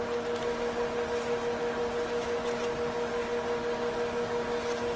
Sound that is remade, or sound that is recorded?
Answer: recorded